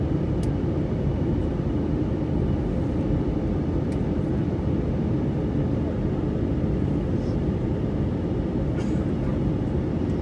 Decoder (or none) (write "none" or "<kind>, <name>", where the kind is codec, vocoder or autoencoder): none